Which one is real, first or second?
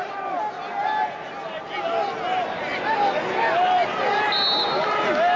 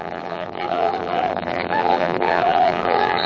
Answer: first